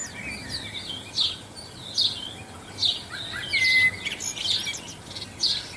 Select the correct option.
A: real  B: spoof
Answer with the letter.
A